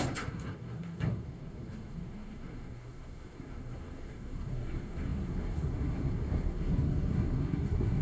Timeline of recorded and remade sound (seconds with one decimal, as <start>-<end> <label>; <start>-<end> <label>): 0.0-8.0 remade